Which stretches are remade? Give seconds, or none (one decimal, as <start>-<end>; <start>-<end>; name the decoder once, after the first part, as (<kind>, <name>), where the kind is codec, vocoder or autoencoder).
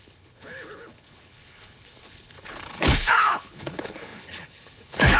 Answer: 0.0-5.2 (codec, HILCodec)